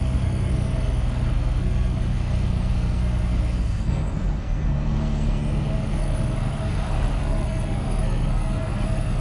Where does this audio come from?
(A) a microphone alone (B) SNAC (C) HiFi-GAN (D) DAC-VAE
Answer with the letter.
B